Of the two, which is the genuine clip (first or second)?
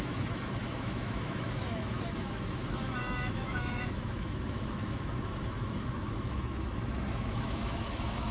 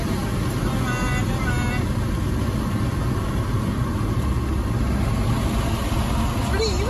second